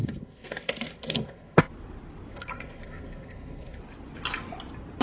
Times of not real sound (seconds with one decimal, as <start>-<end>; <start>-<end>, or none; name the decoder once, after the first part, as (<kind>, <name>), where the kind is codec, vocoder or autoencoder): 0.0-1.7 (codec, SNAC); 2.3-3.8